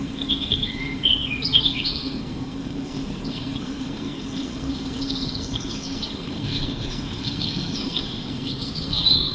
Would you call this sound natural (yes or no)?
no